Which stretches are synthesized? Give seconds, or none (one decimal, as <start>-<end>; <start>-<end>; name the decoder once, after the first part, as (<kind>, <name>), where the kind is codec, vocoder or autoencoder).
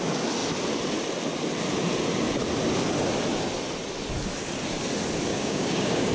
5.3-6.1 (codec, DAC)